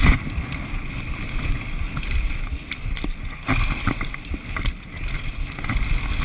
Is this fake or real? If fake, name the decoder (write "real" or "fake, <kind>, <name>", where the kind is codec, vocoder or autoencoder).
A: real